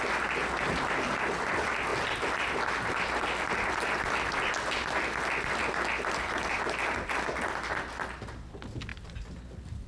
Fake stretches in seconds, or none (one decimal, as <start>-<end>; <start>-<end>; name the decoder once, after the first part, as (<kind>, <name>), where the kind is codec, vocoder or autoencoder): 1.9-4.3 (vocoder, BigVGAN v2); 6.4-7.3; 8.9-9.4